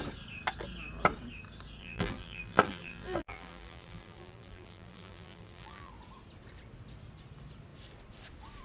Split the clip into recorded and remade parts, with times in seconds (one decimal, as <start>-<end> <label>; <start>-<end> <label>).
0.0-1.8 recorded; 1.8-5.9 remade; 5.9-8.6 recorded